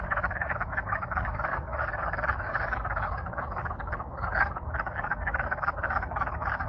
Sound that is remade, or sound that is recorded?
remade